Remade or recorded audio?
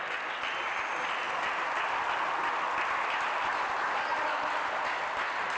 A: recorded